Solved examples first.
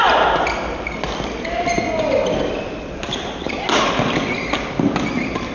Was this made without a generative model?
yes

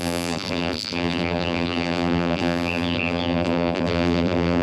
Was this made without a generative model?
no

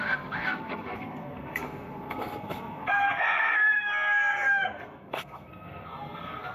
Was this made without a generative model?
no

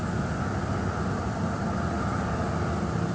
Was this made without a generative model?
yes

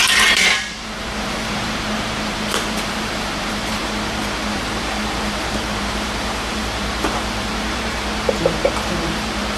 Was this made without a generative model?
no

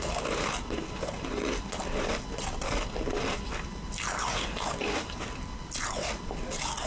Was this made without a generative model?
yes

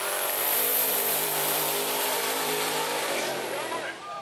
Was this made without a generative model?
no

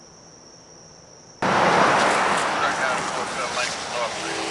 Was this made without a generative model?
yes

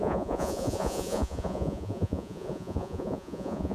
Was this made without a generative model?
no